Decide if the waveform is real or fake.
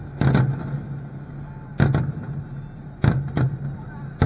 real